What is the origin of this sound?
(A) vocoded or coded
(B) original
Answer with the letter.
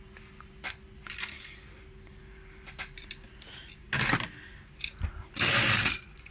B